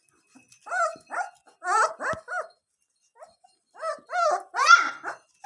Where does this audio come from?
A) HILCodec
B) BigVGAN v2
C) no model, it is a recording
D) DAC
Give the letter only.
C